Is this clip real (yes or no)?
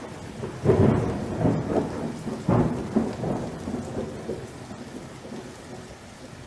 yes